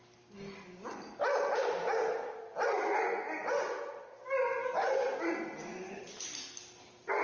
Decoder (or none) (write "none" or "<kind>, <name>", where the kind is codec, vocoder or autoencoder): none